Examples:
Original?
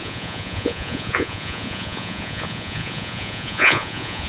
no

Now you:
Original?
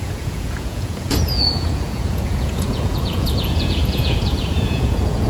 no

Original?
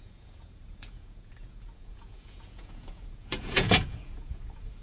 no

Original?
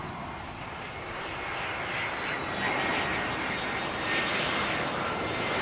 yes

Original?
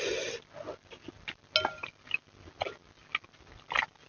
yes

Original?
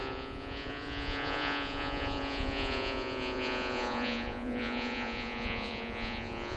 no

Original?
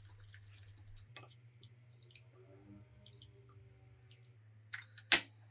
yes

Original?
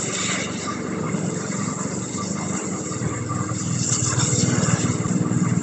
yes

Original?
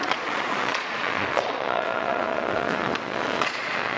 no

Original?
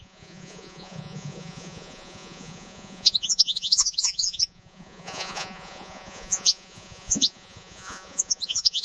no